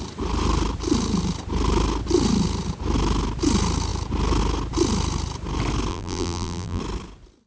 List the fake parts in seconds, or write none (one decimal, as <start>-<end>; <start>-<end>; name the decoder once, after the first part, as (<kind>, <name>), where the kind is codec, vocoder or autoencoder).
5.9-6.8 (vocoder, BigVGAN v2)